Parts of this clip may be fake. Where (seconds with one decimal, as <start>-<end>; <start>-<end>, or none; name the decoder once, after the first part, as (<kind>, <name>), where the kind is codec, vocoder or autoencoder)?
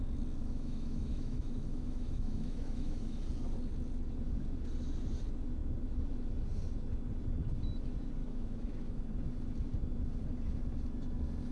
0.4-3.2 (autoencoder, DAC-VAE); 8.2-9.0